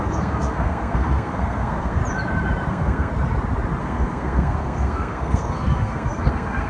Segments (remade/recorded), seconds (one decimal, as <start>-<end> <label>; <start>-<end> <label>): 0.0-2.0 remade; 2.0-2.7 recorded; 2.7-3.1 remade; 3.1-3.8 recorded; 3.8-6.7 remade